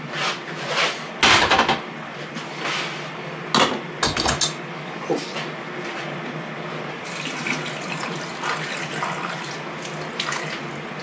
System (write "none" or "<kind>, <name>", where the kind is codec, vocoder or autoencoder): none